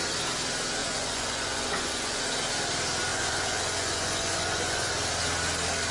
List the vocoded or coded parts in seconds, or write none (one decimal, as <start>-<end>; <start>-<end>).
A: 0.8-2.2; 3.1-4.9